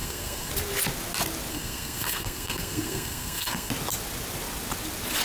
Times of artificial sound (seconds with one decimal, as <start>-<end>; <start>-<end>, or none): 0.0-0.5; 1.5-3.7